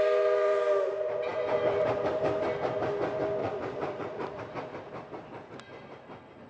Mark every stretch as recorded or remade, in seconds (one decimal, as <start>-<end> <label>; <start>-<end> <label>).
0.0-3.4 recorded; 3.4-4.4 remade; 4.4-6.5 recorded